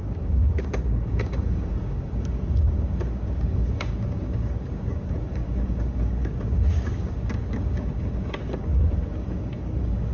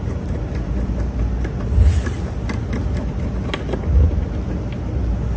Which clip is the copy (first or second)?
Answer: first